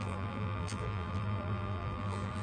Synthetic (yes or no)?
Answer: yes